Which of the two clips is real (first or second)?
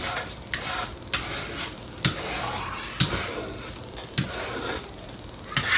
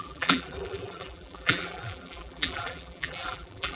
first